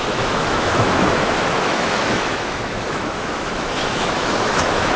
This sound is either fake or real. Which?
fake